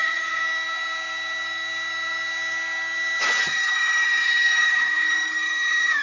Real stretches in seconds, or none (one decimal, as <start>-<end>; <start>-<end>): 0.4-3.4